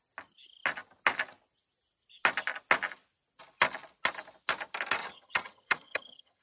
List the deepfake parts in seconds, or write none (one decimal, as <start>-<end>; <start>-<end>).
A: 5.0-6.4